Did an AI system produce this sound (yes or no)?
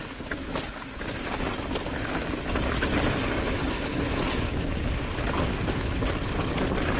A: no